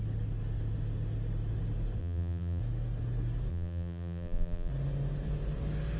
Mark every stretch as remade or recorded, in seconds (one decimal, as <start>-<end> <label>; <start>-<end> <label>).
0.0-2.0 recorded; 2.0-2.6 remade; 2.6-3.5 recorded; 3.5-4.7 remade; 4.7-6.0 recorded